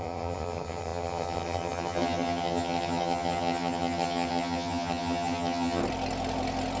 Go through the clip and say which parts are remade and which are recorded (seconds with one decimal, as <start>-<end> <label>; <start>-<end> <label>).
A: 0.0-5.8 remade; 5.8-6.8 recorded